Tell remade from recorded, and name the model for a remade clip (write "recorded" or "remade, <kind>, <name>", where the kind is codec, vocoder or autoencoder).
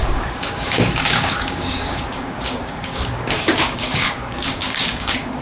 remade, codec, DAC